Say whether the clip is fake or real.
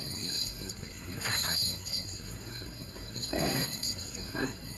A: fake